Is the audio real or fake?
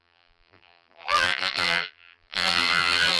fake